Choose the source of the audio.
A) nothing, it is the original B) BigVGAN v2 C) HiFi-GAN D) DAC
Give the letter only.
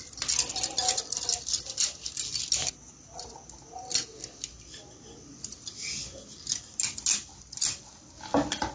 A